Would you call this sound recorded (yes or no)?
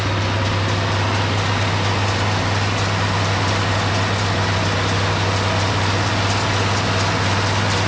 yes